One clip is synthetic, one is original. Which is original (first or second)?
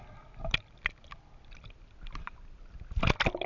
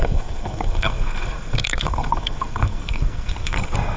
first